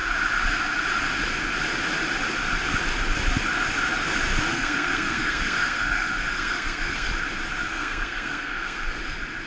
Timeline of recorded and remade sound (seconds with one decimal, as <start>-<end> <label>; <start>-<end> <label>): 0.0-4.5 recorded; 4.5-7.1 remade; 7.1-7.6 recorded; 7.6-9.0 remade; 9.0-9.5 recorded

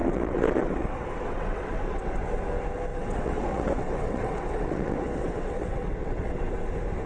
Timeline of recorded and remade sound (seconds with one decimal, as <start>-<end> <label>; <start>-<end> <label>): 0.0-2.1 remade; 2.1-2.9 recorded; 2.9-6.5 remade; 6.5-7.1 recorded

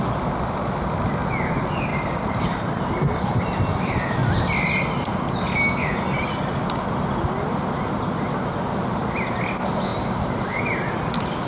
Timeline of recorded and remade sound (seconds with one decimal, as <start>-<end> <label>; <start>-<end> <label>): 0.0-1.9 recorded; 1.9-2.9 remade; 2.9-9.9 recorded; 9.9-10.6 remade; 10.6-11.5 recorded

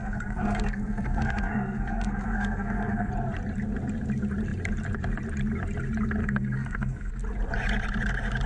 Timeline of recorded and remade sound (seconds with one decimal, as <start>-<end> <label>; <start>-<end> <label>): 0.0-3.1 remade; 3.1-6.2 recorded; 6.2-7.1 remade; 7.1-8.5 recorded